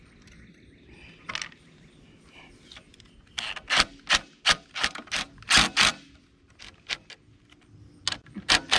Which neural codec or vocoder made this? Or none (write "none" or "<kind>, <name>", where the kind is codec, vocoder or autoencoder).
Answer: none